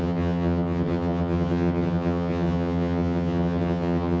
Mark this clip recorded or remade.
remade